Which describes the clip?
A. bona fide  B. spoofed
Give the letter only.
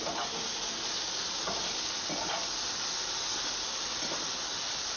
A